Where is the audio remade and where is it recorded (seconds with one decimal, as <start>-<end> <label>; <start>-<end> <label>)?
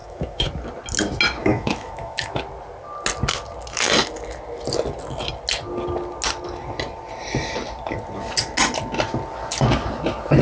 0.0-0.5 remade; 0.5-1.4 recorded; 1.4-2.4 remade; 2.4-10.4 recorded